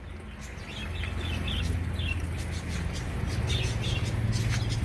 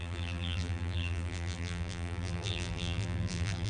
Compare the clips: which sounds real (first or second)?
first